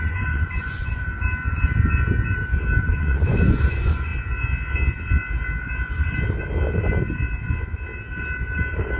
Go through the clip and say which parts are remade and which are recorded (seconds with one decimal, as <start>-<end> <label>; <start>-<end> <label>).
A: 0.0-1.1 remade; 1.1-2.8 recorded; 2.8-4.1 remade; 4.1-9.0 recorded